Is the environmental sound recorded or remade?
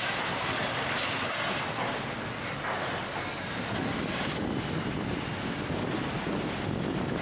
recorded